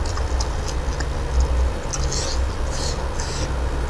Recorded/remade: recorded